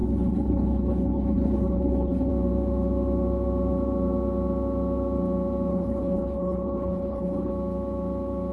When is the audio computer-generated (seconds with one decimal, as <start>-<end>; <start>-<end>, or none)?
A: 0.0-2.3; 5.7-7.5